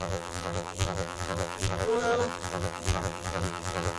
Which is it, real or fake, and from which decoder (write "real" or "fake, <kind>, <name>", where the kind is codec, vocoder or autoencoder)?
fake, vocoder, BigVGAN v2